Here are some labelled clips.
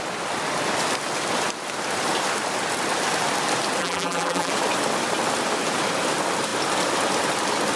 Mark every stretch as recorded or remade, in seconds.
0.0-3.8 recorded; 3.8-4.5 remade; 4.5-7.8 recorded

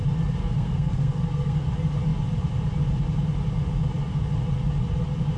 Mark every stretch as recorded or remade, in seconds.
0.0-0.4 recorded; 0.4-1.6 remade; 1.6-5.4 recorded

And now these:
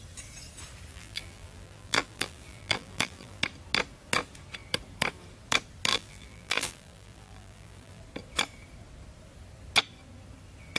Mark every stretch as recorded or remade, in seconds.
0.0-0.9 recorded; 0.9-3.4 remade; 3.4-5.9 recorded; 5.9-8.0 remade; 8.0-10.8 recorded

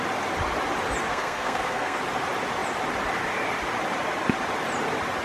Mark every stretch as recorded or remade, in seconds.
0.0-1.1 recorded; 1.1-2.0 remade; 2.0-5.2 recorded